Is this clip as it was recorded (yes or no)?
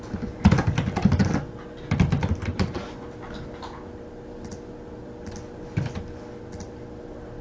yes